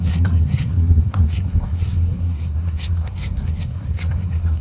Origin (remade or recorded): remade